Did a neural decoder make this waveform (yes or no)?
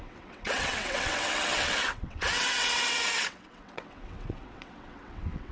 yes